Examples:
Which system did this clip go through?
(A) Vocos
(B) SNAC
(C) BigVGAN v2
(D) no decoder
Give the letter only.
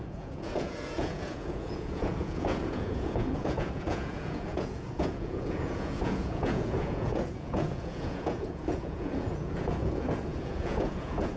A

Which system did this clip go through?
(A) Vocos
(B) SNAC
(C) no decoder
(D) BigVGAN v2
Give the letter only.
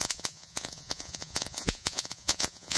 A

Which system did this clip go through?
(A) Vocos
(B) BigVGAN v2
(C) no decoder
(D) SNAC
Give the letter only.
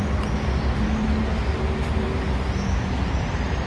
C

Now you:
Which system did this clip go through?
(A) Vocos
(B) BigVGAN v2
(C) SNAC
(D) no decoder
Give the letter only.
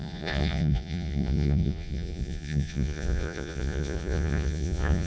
A